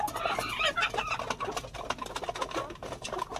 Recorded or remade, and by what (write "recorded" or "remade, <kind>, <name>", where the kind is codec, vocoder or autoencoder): recorded